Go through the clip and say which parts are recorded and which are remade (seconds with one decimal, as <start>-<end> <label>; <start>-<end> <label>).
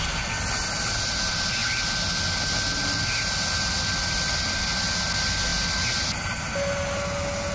0.0-7.5 recorded